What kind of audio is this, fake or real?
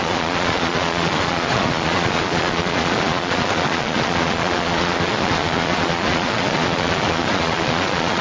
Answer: fake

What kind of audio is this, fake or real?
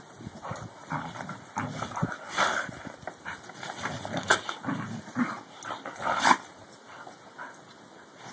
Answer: real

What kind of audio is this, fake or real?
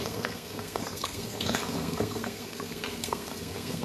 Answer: fake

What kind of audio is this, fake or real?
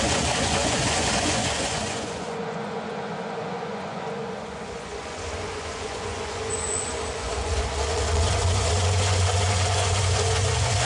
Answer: fake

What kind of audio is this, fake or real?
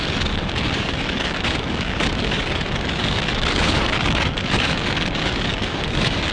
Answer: fake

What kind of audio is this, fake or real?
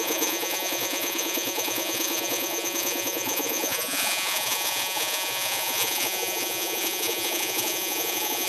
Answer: fake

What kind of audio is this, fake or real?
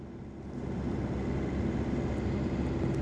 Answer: real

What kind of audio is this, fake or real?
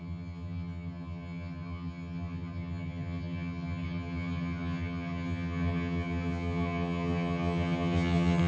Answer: fake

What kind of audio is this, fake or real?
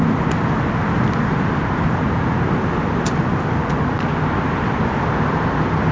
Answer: real